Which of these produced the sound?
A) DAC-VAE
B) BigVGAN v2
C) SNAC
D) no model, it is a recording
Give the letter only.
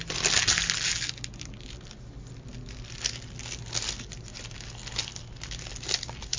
D